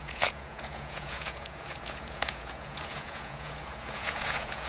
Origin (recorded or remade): remade